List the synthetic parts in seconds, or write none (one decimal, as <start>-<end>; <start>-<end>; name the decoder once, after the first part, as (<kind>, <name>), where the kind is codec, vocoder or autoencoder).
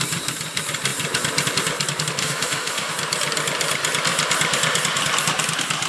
2.2-2.9 (autoencoder, DAC-VAE)